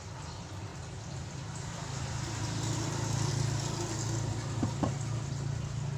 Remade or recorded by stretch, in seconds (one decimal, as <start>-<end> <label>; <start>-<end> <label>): 0.0-6.0 recorded

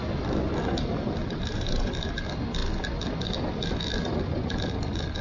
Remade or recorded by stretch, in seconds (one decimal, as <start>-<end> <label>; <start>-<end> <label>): 0.0-1.2 recorded; 1.2-1.9 remade; 1.9-5.2 recorded

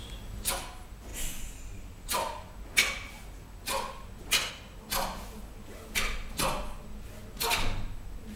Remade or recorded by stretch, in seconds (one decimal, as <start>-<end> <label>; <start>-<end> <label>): 0.0-8.4 recorded

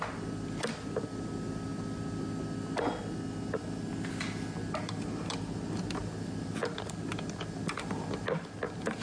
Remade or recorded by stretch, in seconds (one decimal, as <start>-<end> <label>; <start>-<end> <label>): 0.0-9.0 recorded

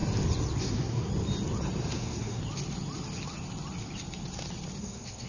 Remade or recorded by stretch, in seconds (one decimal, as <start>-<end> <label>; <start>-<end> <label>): 0.0-0.6 recorded; 0.6-1.1 remade; 1.1-1.9 recorded; 1.9-2.4 remade; 2.4-4.8 recorded; 4.8-5.3 remade

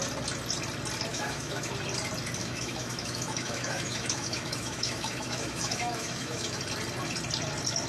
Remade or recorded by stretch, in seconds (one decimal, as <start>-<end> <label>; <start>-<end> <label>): 0.0-1.1 recorded; 1.1-1.7 remade; 1.7-2.4 recorded; 2.4-6.6 remade; 6.6-7.9 recorded